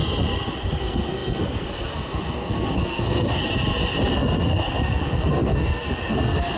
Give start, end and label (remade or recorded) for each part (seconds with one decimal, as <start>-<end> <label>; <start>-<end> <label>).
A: 0.0-0.6 recorded; 0.6-3.4 remade; 3.4-4.1 recorded; 4.1-6.6 remade